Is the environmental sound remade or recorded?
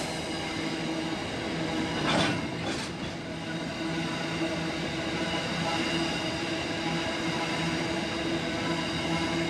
recorded